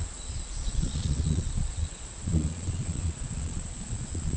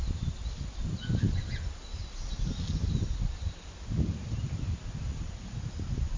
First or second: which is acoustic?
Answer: second